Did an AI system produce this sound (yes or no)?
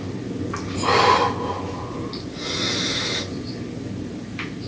no